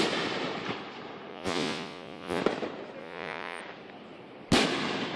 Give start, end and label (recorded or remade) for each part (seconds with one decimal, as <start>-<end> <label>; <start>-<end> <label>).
0.0-1.3 recorded; 1.3-2.4 remade; 2.4-3.0 recorded; 3.0-3.6 remade; 3.6-5.2 recorded

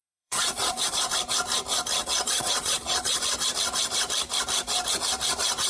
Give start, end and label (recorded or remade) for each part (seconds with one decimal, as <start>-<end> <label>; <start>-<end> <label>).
0.0-1.1 remade; 1.1-2.0 recorded; 2.0-3.2 remade; 3.2-5.7 recorded

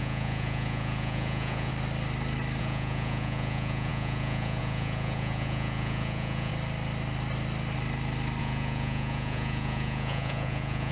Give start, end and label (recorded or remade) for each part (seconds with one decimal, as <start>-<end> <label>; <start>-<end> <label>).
0.0-1.7 remade; 1.7-2.6 recorded; 2.6-6.5 remade; 6.5-8.4 recorded; 8.4-10.9 remade

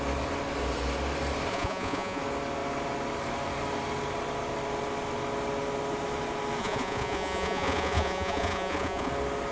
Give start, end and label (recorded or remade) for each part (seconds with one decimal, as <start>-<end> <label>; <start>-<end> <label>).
0.0-1.5 recorded; 1.5-2.2 remade; 2.2-6.6 recorded; 6.6-9.1 remade; 9.1-9.5 recorded

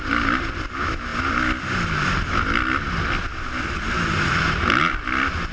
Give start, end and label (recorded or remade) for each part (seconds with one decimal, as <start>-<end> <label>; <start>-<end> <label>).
0.0-5.5 recorded

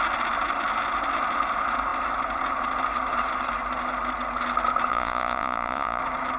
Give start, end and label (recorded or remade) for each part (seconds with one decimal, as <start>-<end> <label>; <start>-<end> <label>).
0.0-4.9 recorded; 4.9-6.0 remade; 6.0-6.4 recorded

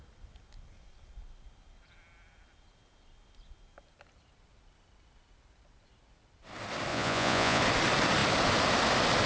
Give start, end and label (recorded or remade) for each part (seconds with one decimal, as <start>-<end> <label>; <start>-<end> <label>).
0.0-6.9 recorded; 6.9-7.6 remade; 7.6-9.3 recorded